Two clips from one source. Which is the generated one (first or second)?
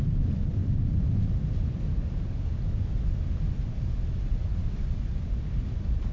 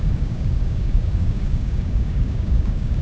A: second